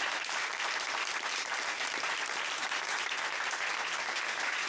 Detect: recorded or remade remade